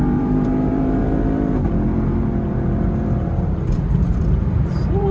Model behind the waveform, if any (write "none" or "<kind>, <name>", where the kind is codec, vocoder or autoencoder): vocoder, BigVGAN v2